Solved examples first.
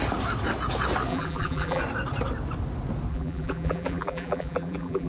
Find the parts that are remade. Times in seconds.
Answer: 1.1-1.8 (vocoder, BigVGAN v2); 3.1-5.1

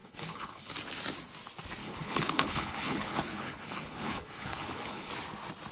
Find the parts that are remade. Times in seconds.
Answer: 0.0-0.7 (codec, HILCodec); 1.8-5.1

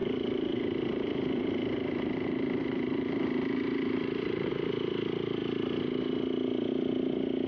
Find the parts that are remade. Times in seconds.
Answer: 0.0-4.5 (vocoder, BigVGAN v2)

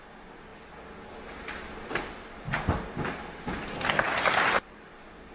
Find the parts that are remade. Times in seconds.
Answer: none

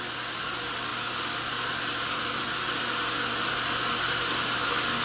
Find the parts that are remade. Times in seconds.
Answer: none

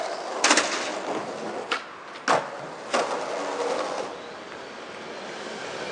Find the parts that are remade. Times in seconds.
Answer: none

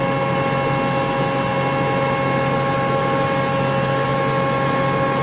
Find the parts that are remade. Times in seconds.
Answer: none

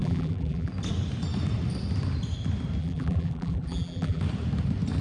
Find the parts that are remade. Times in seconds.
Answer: 0.0-0.7 (vocoder, BigVGAN v2); 2.8-4.2